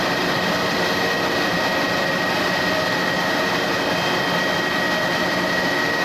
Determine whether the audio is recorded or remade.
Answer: recorded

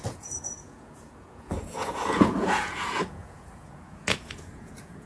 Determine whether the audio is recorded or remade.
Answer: remade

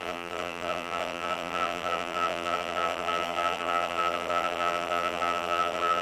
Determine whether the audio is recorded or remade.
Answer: remade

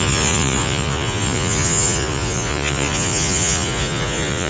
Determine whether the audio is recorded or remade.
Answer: remade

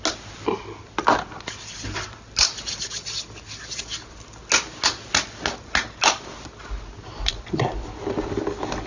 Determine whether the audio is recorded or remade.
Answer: recorded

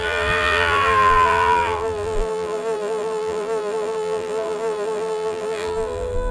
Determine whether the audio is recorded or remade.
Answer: remade